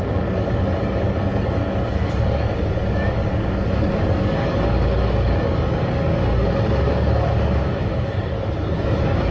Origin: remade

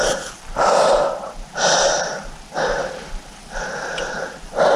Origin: remade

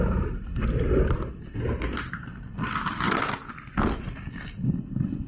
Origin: recorded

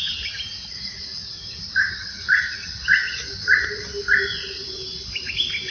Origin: recorded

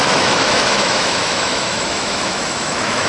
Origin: remade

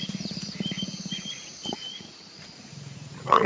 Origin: remade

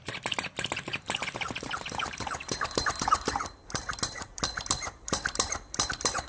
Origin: remade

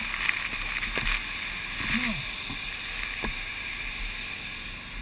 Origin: recorded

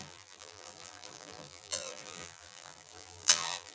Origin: remade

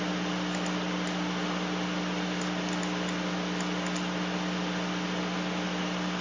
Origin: recorded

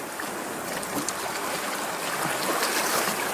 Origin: recorded